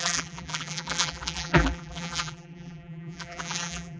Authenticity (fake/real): fake